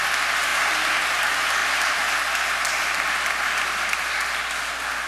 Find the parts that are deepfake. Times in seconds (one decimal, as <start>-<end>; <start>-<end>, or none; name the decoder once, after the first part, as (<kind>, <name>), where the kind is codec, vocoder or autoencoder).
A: 0.5-1.2 (vocoder, BigVGAN v2); 1.6-5.1